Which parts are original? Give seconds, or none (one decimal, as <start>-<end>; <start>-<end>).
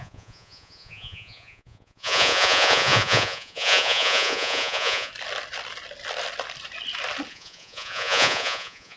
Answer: 5.1-7.3